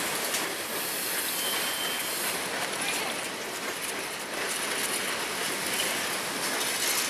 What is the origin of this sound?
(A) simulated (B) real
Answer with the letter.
B